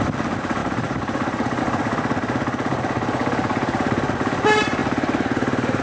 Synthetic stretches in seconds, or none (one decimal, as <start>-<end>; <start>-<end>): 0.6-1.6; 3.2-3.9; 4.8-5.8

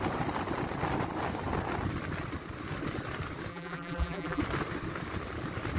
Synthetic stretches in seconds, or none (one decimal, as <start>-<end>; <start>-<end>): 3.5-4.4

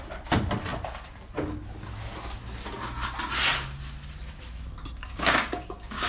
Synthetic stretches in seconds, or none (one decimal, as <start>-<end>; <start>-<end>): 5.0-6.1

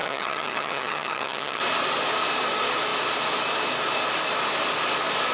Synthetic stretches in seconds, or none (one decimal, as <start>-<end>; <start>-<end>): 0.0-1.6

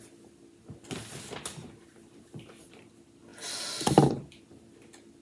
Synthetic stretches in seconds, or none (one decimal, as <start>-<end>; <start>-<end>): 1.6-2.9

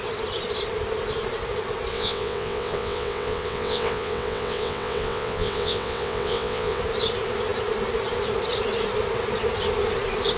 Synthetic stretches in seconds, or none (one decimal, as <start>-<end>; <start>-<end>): 1.9-6.8

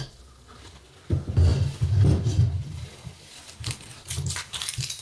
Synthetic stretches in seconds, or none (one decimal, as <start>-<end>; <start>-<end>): none

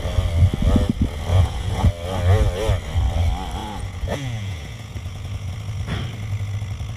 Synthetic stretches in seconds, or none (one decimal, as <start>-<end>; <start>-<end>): 1.3-1.9; 3.6-5.5